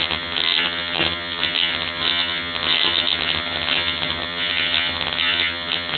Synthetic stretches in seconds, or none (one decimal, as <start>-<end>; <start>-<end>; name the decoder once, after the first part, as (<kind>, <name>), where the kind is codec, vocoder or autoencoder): 0.0-6.0 (vocoder, HiFi-GAN)